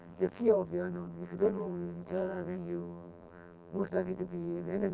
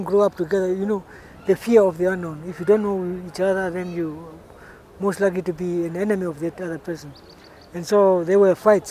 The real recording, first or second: second